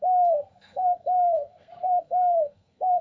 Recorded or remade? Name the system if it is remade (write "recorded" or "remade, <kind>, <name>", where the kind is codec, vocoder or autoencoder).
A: remade, codec, SNAC